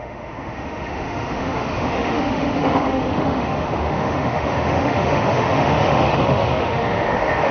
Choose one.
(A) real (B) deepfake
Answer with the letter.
B